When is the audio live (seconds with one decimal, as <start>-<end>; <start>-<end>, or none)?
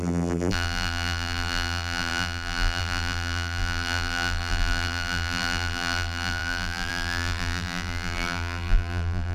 none